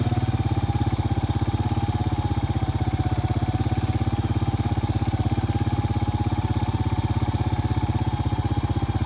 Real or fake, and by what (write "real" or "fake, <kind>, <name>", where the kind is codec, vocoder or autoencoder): real